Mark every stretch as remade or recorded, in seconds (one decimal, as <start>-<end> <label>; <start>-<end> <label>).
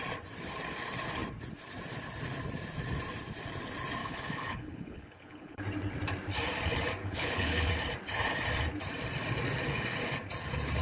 0.0-4.0 recorded; 4.0-5.6 remade; 5.6-7.0 recorded; 7.0-7.7 remade; 7.7-10.8 recorded